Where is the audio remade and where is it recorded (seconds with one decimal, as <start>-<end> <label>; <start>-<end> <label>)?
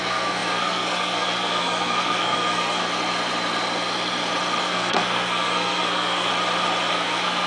0.0-2.8 remade; 2.8-4.6 recorded; 4.6-6.3 remade; 6.3-6.9 recorded; 6.9-7.5 remade